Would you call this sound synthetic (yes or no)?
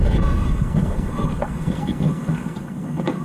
yes